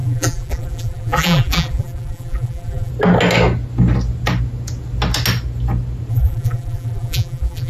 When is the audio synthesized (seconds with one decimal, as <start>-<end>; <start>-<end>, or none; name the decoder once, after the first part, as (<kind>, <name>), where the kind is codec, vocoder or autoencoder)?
0.0-2.9 (vocoder, BigVGAN v2); 6.1-7.7